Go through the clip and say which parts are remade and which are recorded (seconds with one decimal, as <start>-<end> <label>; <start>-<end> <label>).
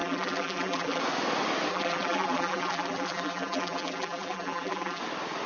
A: 0.0-1.0 remade; 1.0-1.7 recorded; 1.7-5.0 remade; 5.0-5.5 recorded